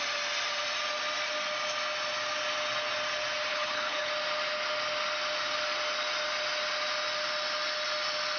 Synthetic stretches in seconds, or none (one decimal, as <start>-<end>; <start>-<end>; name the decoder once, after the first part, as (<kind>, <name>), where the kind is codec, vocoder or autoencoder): 3.5-4.1 (codec, HILCodec)